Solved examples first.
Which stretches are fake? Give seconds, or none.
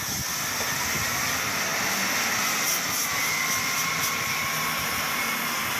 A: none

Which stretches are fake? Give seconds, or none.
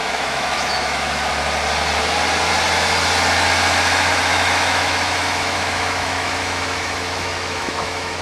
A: 0.0-1.3 (autoencoder, DAC-VAE); 4.3-8.2